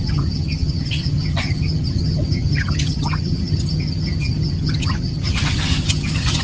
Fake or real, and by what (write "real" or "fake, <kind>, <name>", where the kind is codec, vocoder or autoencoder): fake, vocoder, HiFi-GAN